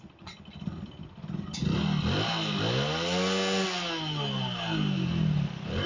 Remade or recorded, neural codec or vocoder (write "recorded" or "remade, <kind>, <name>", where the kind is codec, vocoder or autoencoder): recorded